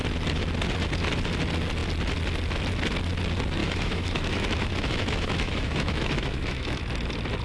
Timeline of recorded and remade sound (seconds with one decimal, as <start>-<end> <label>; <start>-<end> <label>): 0.0-3.6 recorded; 3.6-6.8 remade; 6.8-7.4 recorded